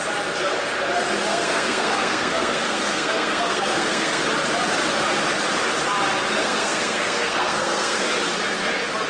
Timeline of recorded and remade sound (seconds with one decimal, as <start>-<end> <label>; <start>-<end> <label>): 0.0-1.3 recorded; 1.3-4.2 remade; 4.2-6.4 recorded; 6.4-8.1 remade; 8.1-9.1 recorded